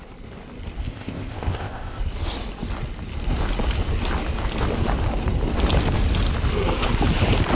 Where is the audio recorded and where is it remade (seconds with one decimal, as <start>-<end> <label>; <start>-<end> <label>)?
0.0-0.8 recorded; 0.8-2.0 remade; 2.0-7.5 recorded